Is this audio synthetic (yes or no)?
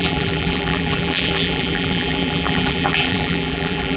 yes